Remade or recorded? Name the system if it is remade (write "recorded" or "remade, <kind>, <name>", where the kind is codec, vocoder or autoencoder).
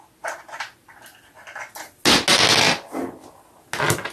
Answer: recorded